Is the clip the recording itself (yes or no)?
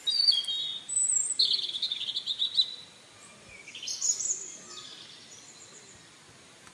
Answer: yes